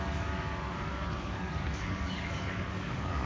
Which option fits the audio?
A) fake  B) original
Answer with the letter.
A